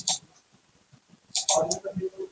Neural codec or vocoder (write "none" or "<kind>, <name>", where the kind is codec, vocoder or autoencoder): vocoder, BigVGAN v2